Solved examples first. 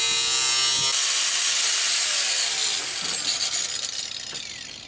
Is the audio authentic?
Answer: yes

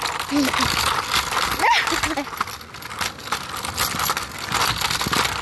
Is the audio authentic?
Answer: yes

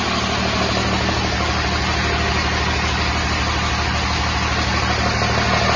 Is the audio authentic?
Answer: yes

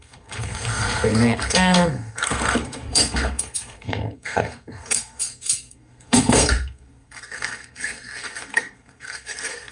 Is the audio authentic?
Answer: no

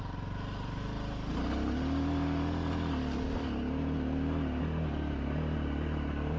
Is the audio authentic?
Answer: yes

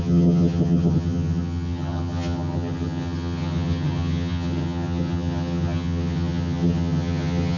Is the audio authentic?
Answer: no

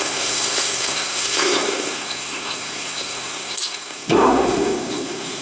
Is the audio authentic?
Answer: no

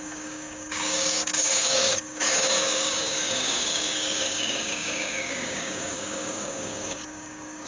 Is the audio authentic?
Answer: no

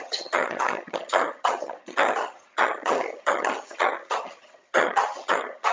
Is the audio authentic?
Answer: no